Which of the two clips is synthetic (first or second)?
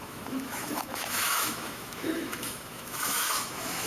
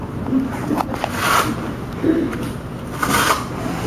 first